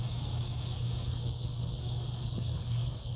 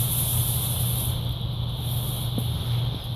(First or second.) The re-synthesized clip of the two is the first